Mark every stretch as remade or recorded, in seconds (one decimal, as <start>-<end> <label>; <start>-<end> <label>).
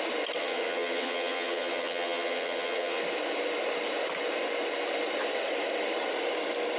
0.0-0.4 recorded; 0.4-3.0 remade; 3.0-6.8 recorded